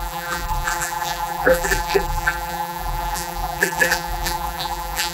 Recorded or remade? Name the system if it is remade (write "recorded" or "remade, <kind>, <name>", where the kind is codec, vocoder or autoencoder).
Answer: remade, vocoder, BigVGAN v2